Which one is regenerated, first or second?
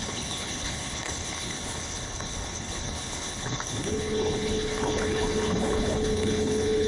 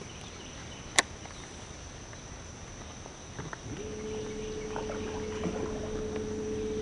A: first